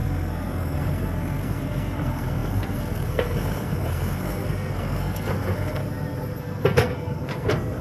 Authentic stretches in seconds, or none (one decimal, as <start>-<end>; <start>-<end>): 5.8-6.4